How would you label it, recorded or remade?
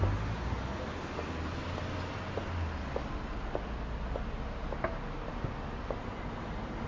recorded